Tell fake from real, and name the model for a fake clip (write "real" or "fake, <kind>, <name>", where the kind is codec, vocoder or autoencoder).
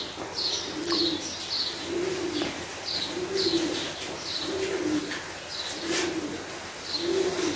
real